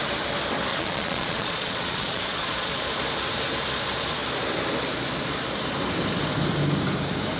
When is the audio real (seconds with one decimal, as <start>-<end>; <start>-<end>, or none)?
0.0-0.7; 2.7-7.4

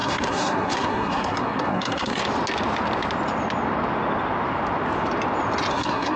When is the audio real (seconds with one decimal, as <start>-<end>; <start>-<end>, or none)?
2.2-5.7

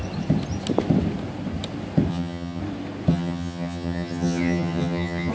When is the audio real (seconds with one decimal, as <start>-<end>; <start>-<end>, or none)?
0.0-2.1; 2.6-3.1

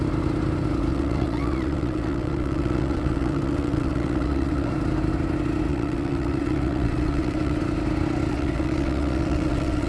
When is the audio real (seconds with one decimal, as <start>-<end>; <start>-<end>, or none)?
0.0-0.9; 4.7-5.7; 7.6-8.3

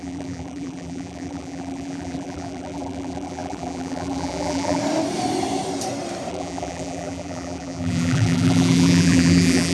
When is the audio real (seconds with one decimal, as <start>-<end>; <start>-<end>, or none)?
4.8-6.3